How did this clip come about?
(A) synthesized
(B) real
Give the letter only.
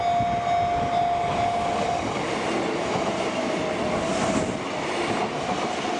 B